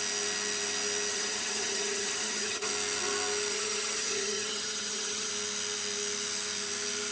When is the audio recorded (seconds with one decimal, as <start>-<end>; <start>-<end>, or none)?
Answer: 0.0-1.1; 2.7-3.5; 5.3-7.1